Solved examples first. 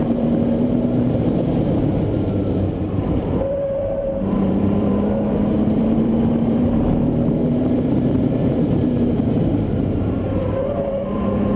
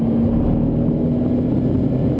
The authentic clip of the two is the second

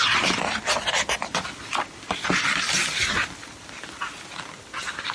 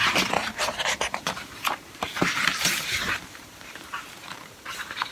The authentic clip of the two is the first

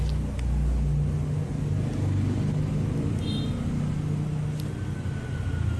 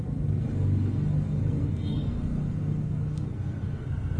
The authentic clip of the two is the first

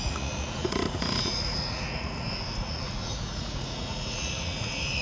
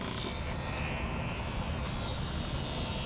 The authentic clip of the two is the second